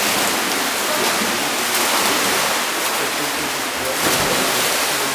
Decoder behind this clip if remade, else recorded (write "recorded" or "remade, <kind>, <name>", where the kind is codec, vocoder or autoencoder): recorded